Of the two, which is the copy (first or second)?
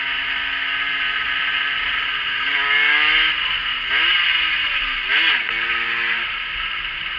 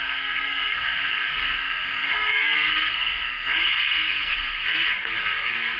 second